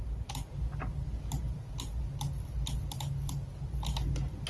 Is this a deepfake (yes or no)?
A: no